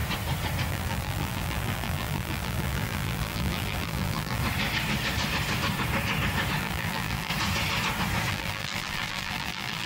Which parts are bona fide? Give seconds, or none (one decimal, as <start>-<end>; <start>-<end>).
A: 0.0-0.7; 4.4-6.6; 7.3-8.3